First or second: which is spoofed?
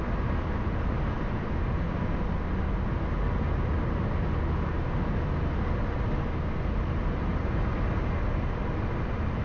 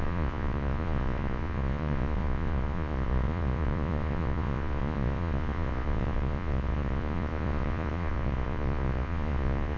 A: second